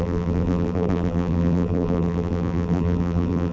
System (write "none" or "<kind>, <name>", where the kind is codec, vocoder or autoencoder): vocoder, BigVGAN v2